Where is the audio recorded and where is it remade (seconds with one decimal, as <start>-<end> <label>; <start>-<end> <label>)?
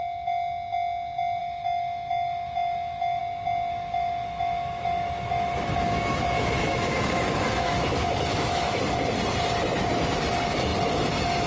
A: 0.0-1.4 recorded; 1.4-3.2 remade; 3.2-3.7 recorded; 3.7-8.8 remade; 8.8-11.5 recorded